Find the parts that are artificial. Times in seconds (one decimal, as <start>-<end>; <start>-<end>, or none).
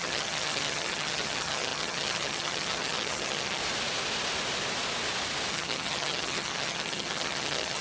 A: 0.0-3.6; 5.5-7.8